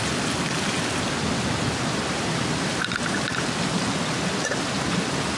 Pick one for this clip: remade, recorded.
recorded